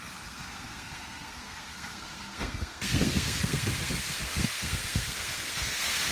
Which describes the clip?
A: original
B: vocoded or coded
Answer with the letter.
B